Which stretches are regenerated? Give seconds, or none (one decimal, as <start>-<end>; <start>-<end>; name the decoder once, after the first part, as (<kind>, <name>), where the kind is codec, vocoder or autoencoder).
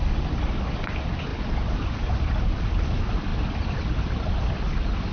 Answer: none